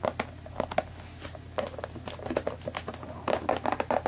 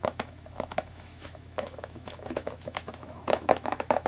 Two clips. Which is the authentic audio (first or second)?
first